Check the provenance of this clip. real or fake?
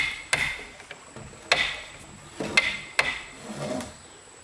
real